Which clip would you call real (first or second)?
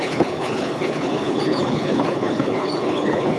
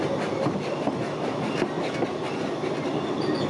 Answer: second